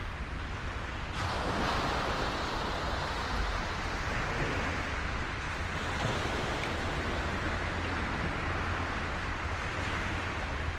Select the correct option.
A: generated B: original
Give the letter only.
B